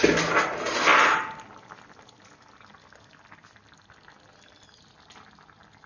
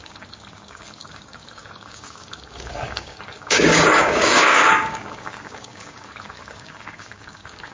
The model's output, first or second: second